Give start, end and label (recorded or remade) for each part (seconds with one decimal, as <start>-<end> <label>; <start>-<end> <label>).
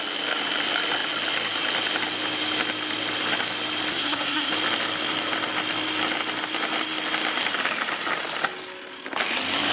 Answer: 0.0-3.9 recorded; 3.9-4.5 remade; 4.5-9.7 recorded